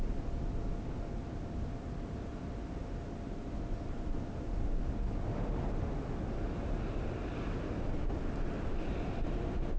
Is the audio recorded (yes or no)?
yes